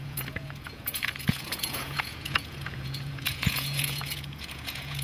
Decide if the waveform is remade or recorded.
remade